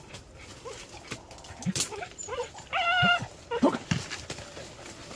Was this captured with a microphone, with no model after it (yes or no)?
yes